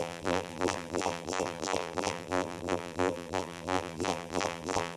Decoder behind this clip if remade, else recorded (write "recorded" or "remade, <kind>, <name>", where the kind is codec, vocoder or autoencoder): remade, vocoder, BigVGAN v2